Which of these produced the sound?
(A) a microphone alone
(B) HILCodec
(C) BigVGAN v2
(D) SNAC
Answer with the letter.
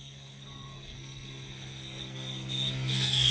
D